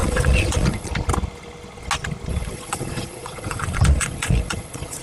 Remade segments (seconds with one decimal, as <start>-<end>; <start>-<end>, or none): 0.0-0.9; 2.3-5.0